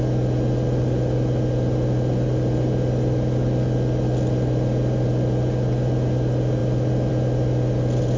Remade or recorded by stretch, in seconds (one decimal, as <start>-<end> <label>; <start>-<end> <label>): 0.0-8.2 recorded